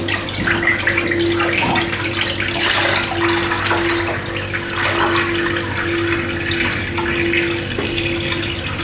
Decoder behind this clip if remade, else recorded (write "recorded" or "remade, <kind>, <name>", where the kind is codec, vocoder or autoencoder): recorded